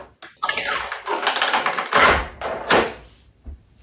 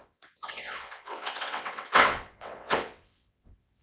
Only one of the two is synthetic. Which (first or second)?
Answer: second